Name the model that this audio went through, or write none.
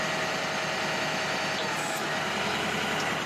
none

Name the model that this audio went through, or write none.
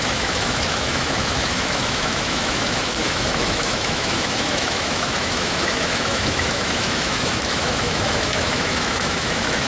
autoencoder, DAC-VAE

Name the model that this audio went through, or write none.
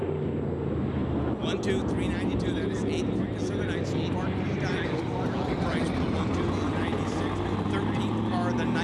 none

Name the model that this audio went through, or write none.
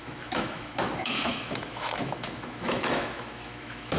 autoencoder, DAC-VAE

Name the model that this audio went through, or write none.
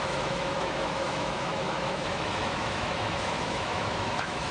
autoencoder, DAC-VAE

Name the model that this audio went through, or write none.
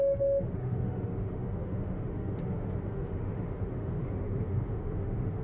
autoencoder, DAC-VAE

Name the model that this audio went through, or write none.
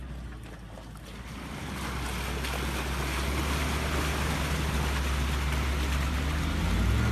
none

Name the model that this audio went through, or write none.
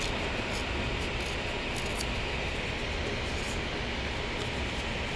none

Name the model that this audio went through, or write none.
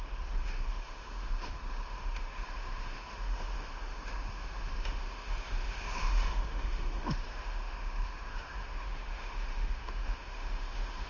autoencoder, DAC-VAE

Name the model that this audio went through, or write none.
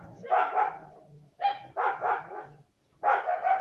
autoencoder, DAC-VAE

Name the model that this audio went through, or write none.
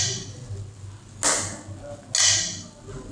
none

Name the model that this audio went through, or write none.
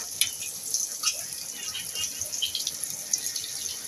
none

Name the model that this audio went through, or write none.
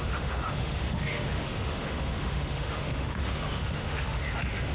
autoencoder, DAC-VAE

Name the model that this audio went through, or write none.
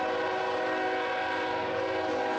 none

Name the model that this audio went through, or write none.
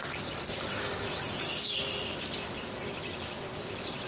none